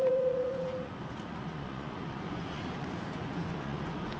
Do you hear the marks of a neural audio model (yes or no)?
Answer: yes